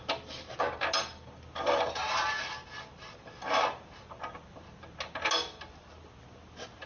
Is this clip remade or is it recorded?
recorded